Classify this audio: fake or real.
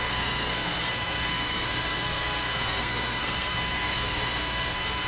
fake